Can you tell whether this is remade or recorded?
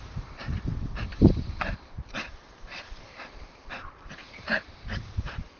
remade